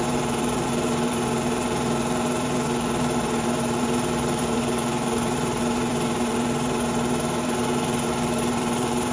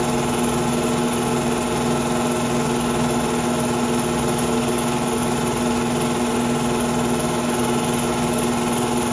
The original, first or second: second